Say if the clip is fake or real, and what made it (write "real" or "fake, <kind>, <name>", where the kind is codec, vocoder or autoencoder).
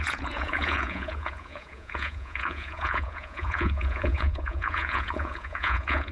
fake, vocoder, Vocos